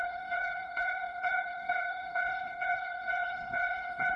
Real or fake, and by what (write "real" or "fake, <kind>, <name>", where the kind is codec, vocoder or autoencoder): fake, codec, HILCodec